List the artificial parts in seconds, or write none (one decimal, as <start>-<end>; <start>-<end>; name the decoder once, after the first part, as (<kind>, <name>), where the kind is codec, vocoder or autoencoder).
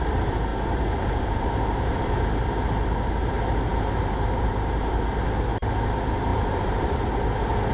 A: 0.5-2.0 (vocoder, BigVGAN v2); 3.7-4.5; 6.3-7.1